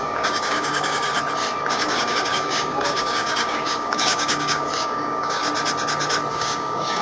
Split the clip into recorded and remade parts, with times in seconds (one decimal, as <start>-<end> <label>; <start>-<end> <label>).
0.0-1.1 remade; 1.1-1.7 recorded; 1.7-5.4 remade; 5.4-6.3 recorded; 6.3-7.0 remade